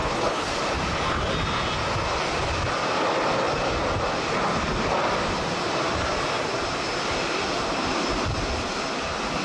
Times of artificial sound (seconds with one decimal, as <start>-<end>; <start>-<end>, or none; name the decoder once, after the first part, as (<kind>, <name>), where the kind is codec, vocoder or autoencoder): 0.0-0.5 (codec, HILCodec)